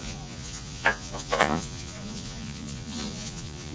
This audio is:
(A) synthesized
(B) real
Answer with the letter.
A